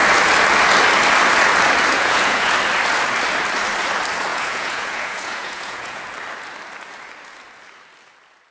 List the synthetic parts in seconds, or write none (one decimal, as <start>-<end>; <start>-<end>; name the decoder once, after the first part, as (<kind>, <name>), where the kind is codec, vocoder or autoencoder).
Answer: 1.9-2.5 (vocoder, Vocos); 4.3-6.0